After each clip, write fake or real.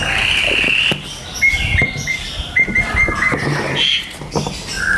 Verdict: real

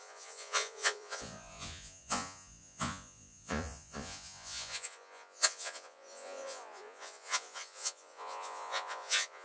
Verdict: fake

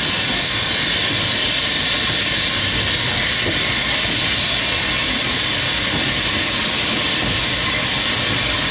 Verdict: real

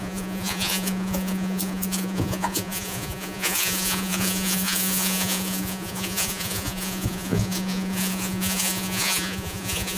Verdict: fake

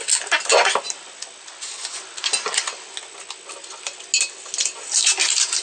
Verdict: real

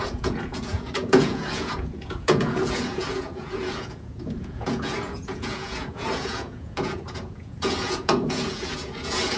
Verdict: fake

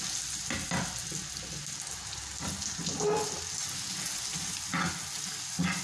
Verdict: real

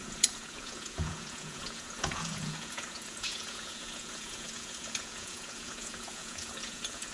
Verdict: fake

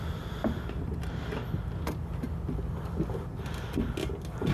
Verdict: real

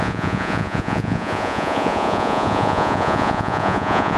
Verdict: fake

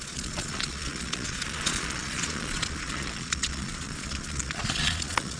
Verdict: fake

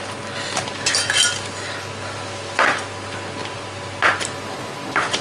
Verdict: real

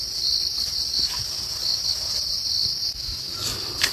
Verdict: real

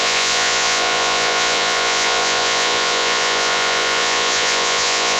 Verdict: fake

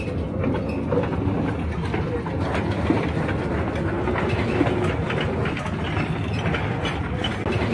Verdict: real